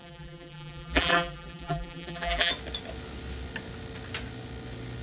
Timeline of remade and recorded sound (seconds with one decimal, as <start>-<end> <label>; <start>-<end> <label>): 0.0-2.5 remade; 2.5-5.0 recorded